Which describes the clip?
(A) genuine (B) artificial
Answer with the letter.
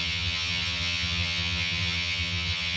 B